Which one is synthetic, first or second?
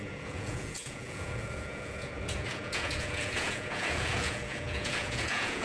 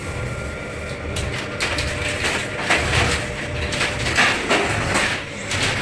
first